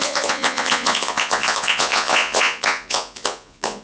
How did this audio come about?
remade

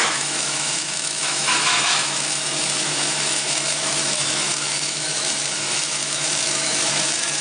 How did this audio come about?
remade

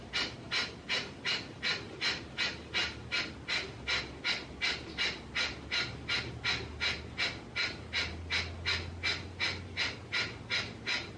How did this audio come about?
recorded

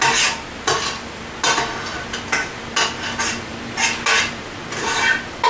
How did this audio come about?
recorded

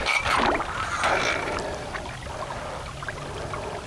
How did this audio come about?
recorded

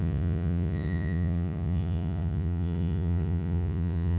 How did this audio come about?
remade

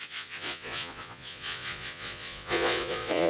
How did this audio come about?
remade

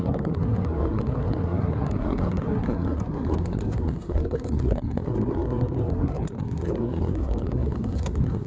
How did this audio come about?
remade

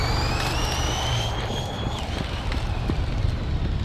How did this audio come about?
recorded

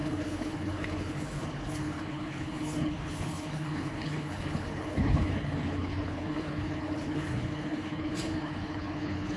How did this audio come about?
remade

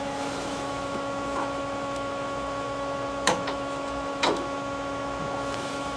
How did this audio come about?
remade